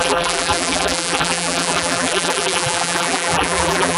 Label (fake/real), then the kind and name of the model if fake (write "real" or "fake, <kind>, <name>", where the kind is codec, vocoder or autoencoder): fake, vocoder, BigVGAN v2